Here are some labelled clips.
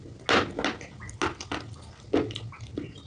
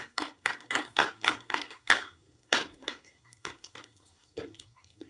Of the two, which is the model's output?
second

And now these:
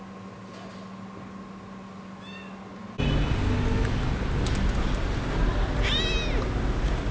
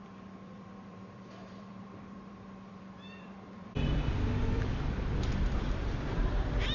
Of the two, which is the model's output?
second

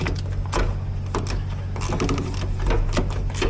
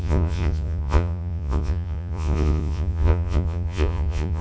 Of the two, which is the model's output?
second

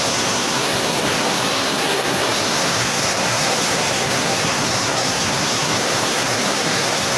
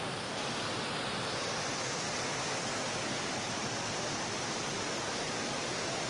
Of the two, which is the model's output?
first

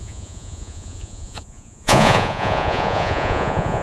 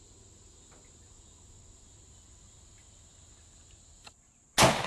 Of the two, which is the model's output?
first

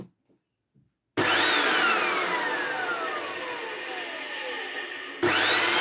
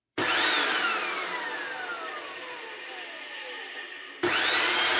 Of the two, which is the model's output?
second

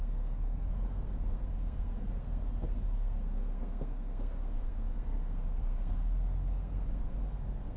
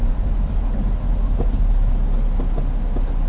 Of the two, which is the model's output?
first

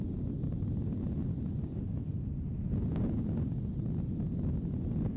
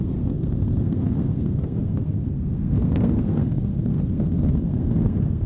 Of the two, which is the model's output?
second